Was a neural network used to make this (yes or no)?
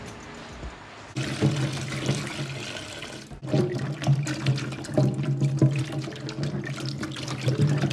no